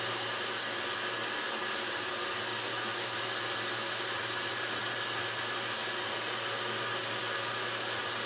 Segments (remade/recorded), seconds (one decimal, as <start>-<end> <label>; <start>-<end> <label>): 0.0-2.7 recorded; 2.7-3.2 remade; 3.2-8.3 recorded